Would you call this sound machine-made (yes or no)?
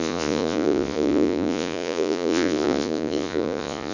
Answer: yes